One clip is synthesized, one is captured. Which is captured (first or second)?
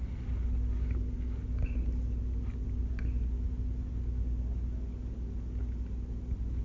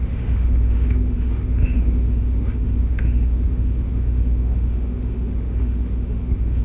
first